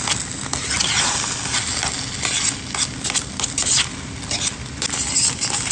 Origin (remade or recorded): recorded